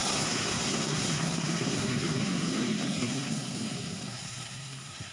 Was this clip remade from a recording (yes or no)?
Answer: yes